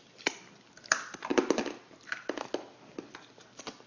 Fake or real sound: real